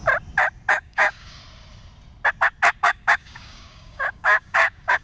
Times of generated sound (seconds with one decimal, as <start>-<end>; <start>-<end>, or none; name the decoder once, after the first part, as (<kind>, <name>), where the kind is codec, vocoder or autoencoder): 0.7-1.4 (codec, DAC); 2.8-5.0